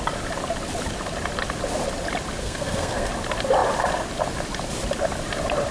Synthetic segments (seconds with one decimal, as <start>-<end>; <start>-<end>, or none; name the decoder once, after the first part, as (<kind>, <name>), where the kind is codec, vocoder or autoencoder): 2.4-3.1 (codec, SNAC)